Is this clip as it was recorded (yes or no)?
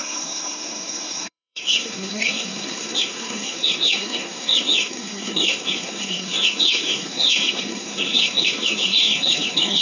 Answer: no